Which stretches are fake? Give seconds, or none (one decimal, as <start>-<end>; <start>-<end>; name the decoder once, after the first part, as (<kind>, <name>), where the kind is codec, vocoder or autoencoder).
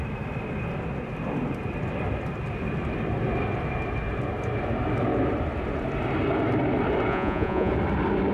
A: 7.1-7.7 (vocoder, Vocos)